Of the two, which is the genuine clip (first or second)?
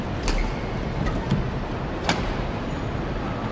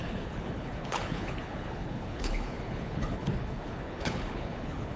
first